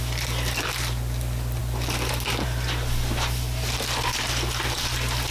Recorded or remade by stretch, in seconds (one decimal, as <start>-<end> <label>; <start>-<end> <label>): 0.0-5.3 recorded